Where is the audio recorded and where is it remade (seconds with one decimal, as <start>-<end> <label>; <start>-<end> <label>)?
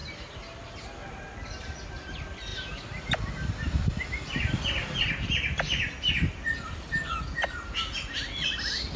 0.0-9.0 recorded